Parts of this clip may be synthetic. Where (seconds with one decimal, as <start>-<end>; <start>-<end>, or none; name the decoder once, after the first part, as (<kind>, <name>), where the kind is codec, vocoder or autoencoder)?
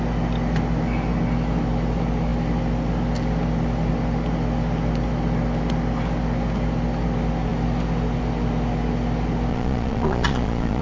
9.5-10.8 (vocoder, Vocos)